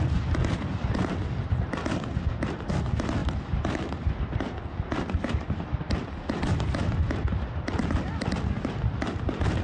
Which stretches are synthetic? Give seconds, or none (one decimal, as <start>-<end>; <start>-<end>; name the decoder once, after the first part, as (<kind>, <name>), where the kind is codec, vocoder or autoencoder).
none